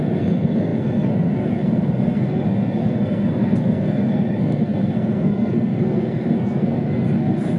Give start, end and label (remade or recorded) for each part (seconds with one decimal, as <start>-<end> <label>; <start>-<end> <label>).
0.0-7.6 remade